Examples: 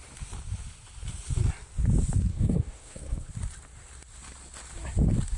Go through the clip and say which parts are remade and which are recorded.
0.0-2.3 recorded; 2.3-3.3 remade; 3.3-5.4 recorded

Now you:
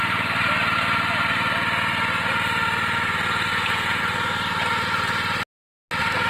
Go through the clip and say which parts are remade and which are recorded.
0.0-3.5 recorded; 3.5-4.0 remade; 4.0-6.3 recorded